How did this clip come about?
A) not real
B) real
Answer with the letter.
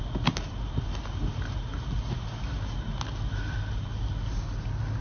B